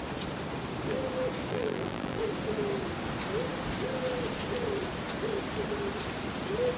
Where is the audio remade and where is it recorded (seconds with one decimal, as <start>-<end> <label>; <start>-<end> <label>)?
0.0-1.5 recorded; 1.5-2.2 remade; 2.2-6.8 recorded